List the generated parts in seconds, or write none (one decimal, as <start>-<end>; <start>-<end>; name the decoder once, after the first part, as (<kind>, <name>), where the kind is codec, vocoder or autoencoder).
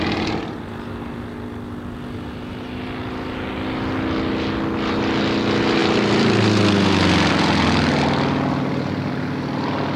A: 5.8-7.3 (vocoder, BigVGAN v2)